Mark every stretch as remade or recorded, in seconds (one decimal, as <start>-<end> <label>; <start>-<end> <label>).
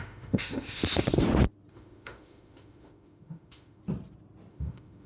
0.0-0.8 remade; 0.8-1.7 recorded; 1.7-3.8 remade; 3.8-4.5 recorded; 4.5-5.1 remade